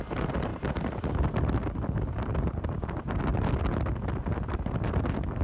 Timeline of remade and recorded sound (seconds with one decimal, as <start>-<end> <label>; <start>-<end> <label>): 0.0-0.5 recorded; 0.5-2.6 remade; 2.6-3.3 recorded; 3.3-4.5 remade; 4.5-5.4 recorded